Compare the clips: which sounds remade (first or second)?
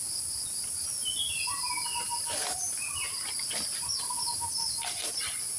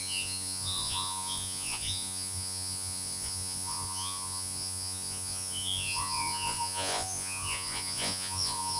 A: second